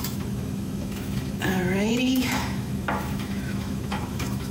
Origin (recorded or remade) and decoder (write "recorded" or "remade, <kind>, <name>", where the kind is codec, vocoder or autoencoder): remade, autoencoder, DAC-VAE